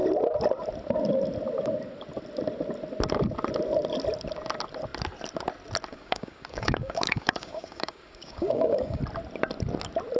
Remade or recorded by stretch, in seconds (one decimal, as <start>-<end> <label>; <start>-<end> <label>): 0.0-5.9 recorded; 5.9-9.0 remade; 9.0-10.2 recorded